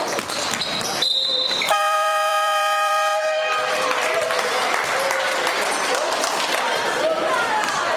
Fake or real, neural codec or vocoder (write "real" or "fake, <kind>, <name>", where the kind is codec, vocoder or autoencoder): fake, vocoder, BigVGAN v2